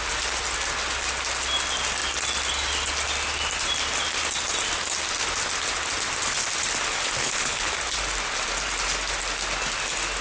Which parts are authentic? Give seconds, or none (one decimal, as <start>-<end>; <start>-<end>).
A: 0.0-7.2; 7.7-10.2